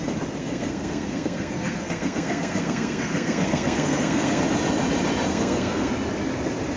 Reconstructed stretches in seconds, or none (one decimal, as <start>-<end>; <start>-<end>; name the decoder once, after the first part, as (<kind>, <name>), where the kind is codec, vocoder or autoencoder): 0.4-4.4 (codec, SNAC); 5.3-5.9